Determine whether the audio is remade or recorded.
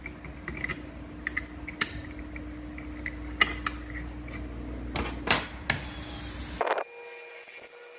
recorded